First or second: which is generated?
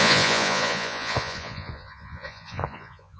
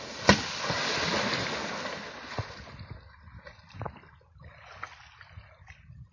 first